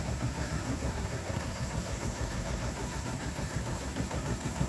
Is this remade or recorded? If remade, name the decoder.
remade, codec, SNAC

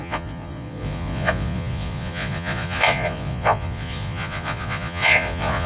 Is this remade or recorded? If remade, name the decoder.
remade, vocoder, Vocos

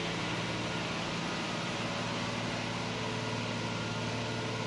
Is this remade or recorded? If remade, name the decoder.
recorded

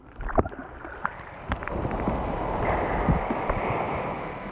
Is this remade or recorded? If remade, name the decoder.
recorded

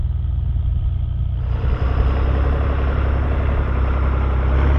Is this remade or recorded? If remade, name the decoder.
recorded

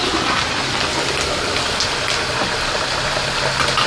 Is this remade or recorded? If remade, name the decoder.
recorded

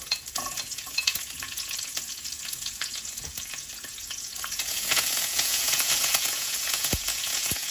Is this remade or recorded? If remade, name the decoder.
remade, vocoder, Vocos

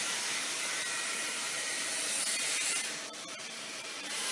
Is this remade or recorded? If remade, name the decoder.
remade, vocoder, BigVGAN v2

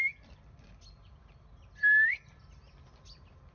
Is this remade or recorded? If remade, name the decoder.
recorded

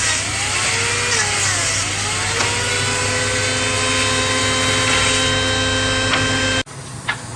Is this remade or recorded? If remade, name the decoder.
recorded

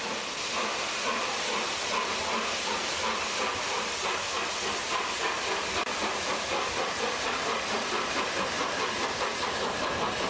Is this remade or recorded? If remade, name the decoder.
recorded